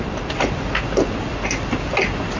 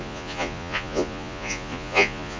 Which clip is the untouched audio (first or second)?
first